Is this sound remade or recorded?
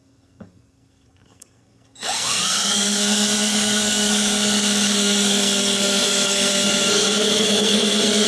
remade